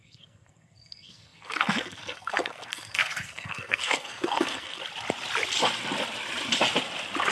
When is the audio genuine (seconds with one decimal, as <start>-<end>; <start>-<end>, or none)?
4.8-7.3